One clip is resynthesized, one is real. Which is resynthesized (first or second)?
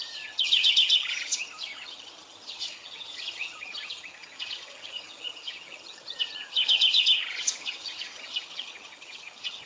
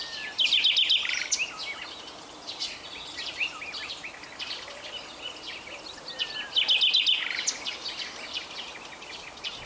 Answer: first